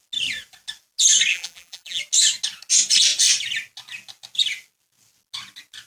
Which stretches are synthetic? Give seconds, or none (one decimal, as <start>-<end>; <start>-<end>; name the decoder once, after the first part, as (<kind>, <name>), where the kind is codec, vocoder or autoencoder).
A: 1.3-2.0 (vocoder, BigVGAN v2)